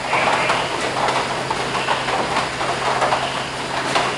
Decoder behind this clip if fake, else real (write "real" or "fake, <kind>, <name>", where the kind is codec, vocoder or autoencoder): real